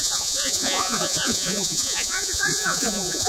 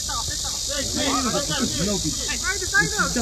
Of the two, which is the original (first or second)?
second